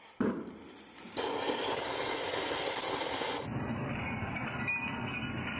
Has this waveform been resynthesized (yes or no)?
yes